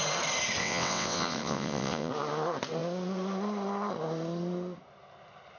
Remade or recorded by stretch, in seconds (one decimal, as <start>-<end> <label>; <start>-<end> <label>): 0.0-0.6 recorded; 0.6-2.1 remade; 2.1-5.6 recorded